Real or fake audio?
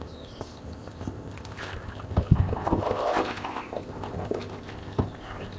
fake